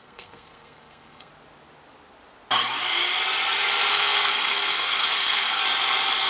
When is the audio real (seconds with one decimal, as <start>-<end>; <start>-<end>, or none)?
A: 1.3-3.9; 5.6-6.3